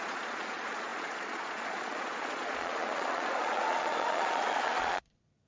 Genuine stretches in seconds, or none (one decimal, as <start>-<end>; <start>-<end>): none